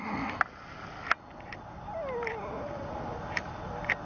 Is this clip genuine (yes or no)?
yes